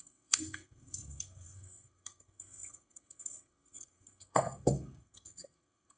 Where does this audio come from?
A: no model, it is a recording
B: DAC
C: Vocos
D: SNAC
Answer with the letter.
D